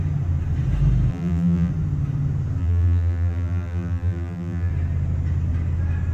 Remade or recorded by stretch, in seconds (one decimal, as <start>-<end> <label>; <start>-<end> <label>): 0.0-1.1 recorded; 1.1-1.7 remade; 1.7-2.6 recorded; 2.6-4.7 remade; 4.7-6.1 recorded